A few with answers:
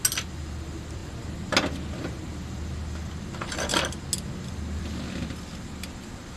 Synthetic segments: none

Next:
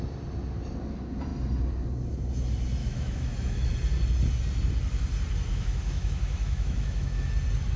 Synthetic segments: 2.8-3.7 (autoencoder, DAC-VAE); 5.5-7.3